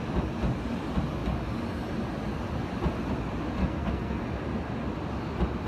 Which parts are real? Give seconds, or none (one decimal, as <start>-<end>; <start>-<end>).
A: 0.0-3.6; 4.2-5.7